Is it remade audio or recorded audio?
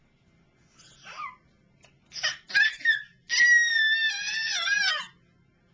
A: recorded